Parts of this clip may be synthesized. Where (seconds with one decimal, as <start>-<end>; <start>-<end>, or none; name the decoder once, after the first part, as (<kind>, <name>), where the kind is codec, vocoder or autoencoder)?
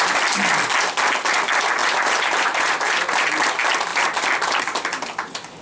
1.8-3.3 (vocoder, BigVGAN v2)